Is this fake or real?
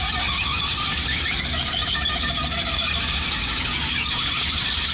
fake